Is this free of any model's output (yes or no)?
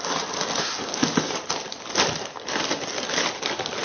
yes